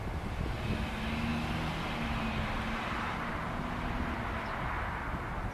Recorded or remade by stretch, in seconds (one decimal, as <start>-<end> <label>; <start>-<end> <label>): 0.0-5.5 recorded